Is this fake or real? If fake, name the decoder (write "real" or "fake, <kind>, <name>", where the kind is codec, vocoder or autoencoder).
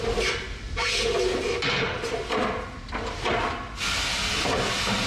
real